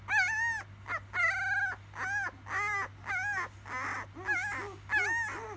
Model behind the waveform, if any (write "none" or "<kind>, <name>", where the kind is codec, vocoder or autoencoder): none